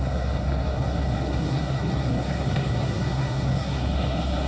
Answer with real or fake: fake